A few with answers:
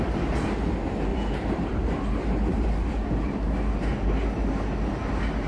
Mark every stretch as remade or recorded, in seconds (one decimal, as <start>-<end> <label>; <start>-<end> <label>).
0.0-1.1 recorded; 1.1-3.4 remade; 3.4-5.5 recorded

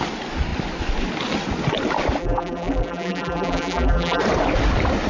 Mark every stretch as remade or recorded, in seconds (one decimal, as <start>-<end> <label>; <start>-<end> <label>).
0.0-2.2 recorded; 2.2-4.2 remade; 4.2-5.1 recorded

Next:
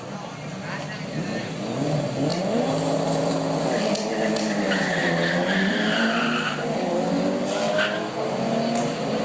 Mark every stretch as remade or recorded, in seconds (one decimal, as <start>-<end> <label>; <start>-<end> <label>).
0.0-2.3 recorded; 2.3-3.3 remade; 3.3-5.0 recorded; 5.0-6.9 remade; 6.9-9.2 recorded

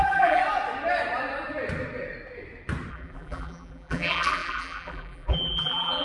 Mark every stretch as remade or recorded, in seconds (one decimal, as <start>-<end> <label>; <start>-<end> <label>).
0.0-0.4 remade; 0.4-2.9 recorded; 2.9-6.0 remade

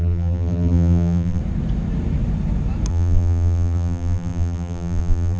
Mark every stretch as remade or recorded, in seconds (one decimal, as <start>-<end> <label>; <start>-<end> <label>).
0.0-1.4 remade; 1.4-2.9 recorded; 2.9-5.4 remade